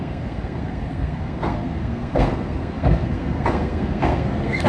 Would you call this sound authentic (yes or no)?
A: no